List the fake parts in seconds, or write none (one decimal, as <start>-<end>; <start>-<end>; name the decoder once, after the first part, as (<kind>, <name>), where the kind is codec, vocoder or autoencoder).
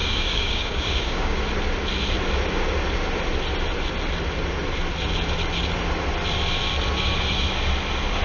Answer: 0.0-1.4 (codec, DAC)